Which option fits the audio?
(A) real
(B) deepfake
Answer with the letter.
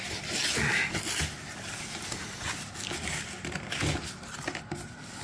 A